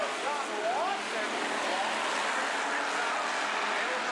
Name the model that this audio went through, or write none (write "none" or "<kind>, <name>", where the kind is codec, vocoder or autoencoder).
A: none